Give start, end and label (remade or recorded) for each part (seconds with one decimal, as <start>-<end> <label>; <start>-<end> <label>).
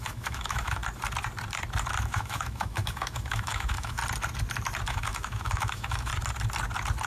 0.0-0.8 remade; 0.8-2.0 recorded; 2.0-4.0 remade; 4.0-4.9 recorded; 4.9-6.1 remade; 6.1-7.1 recorded